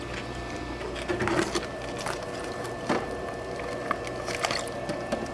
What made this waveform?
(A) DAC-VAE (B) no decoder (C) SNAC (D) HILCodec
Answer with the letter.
B